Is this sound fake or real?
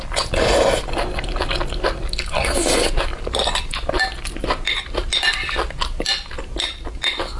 real